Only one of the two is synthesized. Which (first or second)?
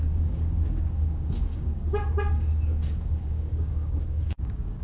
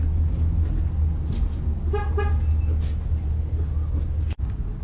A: first